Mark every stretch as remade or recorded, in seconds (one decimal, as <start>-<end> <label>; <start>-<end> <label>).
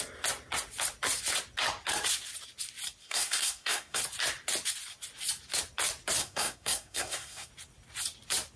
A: 0.0-3.0 recorded; 3.0-4.0 remade; 4.0-6.2 recorded; 6.2-7.5 remade; 7.5-8.6 recorded